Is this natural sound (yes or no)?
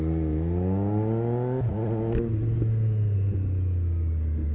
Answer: yes